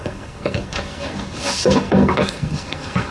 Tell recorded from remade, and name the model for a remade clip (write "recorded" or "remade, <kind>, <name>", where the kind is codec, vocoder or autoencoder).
remade, codec, SNAC